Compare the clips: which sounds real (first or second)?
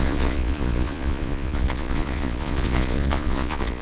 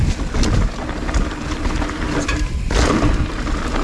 second